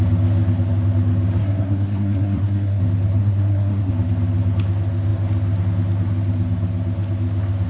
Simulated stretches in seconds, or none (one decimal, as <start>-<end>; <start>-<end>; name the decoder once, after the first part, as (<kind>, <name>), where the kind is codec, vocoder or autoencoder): 1.4-2.8 (codec, SNAC); 3.2-3.9